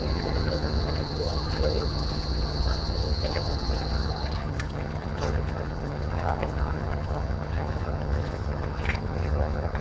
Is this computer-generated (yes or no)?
yes